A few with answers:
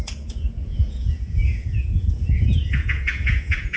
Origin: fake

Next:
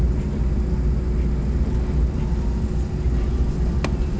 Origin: real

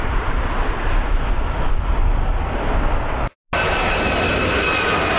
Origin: real